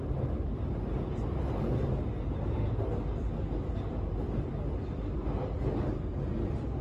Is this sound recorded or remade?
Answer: recorded